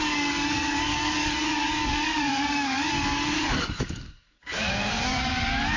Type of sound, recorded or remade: remade